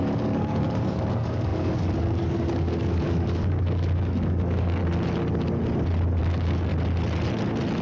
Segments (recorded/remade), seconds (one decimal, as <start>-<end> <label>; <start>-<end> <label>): 0.0-4.8 remade; 4.8-6.2 recorded; 6.2-6.7 remade; 6.7-7.8 recorded